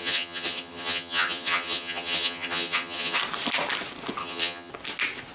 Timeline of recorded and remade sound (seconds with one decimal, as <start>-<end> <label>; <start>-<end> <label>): 0.0-3.2 remade; 3.2-4.2 recorded; 4.2-4.7 remade; 4.7-5.3 recorded